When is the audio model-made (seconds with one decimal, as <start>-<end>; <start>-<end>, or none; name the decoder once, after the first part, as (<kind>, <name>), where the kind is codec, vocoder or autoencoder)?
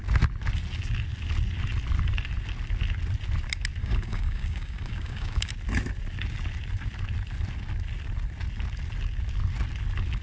3.8-5.5 (codec, DAC)